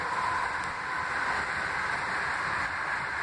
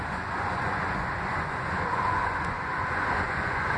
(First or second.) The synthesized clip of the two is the second